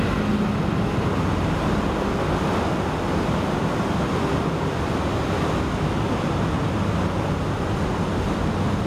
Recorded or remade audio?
recorded